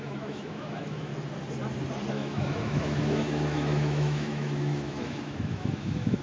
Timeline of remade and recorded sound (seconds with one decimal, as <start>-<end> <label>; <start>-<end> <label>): 0.0-1.1 remade; 1.1-2.1 recorded; 2.1-6.2 remade